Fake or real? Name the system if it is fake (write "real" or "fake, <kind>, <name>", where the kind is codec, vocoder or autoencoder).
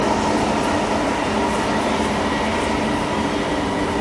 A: real